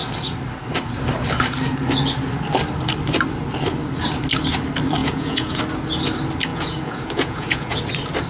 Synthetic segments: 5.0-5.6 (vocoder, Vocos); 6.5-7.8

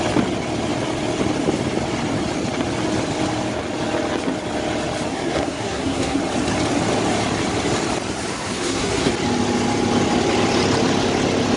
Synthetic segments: 5.1-6.2 (codec, SNAC); 8.3-9.1

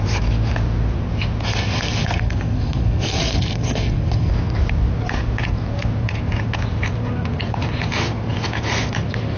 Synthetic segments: 1.5-4.3 (codec, SNAC)

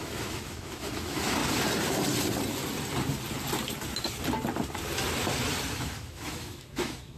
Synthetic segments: 0.0-1.4 (autoencoder, DAC-VAE); 5.7-7.2

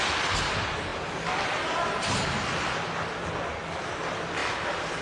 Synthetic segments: none